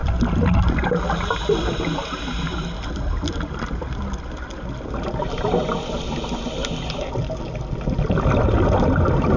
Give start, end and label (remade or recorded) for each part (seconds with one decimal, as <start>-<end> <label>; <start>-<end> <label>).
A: 0.0-9.4 recorded